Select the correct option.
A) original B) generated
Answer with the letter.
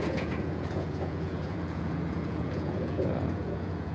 B